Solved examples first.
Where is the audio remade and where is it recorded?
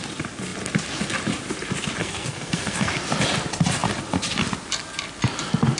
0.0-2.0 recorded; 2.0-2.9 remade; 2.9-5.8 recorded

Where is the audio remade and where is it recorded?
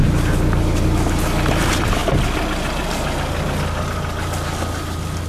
0.0-5.3 recorded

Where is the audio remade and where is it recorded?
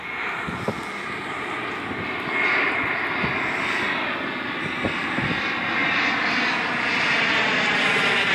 0.0-8.3 recorded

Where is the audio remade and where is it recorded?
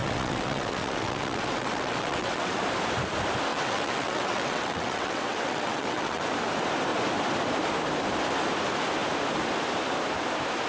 0.0-2.6 remade; 2.6-3.5 recorded; 3.5-6.2 remade; 6.2-10.7 recorded